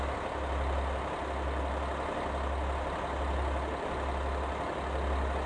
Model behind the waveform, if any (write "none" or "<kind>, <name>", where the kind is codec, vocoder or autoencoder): none